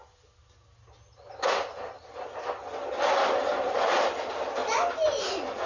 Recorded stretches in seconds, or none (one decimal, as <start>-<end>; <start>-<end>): 0.0-5.7